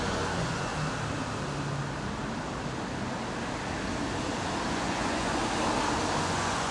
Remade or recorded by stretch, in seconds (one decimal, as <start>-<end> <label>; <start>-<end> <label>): 0.0-0.7 remade; 0.7-4.7 recorded; 4.7-5.4 remade; 5.4-6.2 recorded; 6.2-6.7 remade